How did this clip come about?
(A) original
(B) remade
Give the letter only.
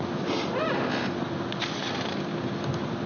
A